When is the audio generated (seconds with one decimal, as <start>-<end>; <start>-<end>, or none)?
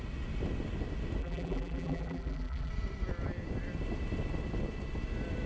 1.2-2.7